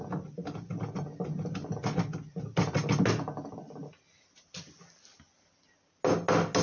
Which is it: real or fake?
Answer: real